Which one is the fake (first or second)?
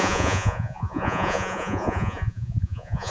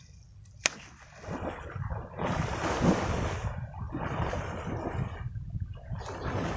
first